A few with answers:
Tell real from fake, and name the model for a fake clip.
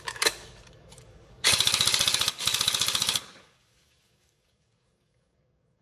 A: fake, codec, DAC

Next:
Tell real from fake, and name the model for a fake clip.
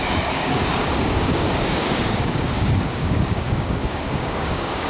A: fake, codec, DAC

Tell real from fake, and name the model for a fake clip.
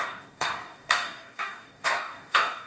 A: fake, codec, DAC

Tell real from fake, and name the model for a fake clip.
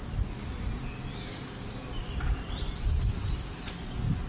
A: real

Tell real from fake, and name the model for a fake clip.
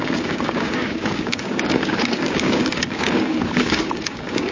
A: fake, codec, DAC